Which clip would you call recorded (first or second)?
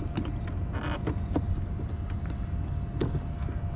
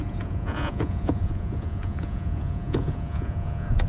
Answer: first